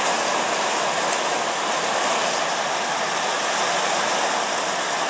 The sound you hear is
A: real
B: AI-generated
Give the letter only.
A